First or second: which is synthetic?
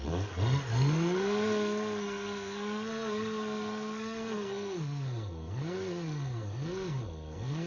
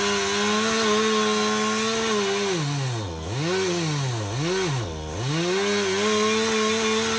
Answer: first